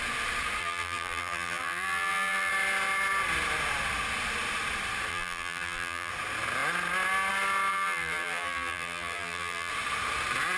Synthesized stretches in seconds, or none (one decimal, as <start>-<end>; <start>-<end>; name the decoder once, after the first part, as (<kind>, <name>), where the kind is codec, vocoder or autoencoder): 0.6-2.5 (vocoder, BigVGAN v2); 5.1-6.1; 7.7-9.7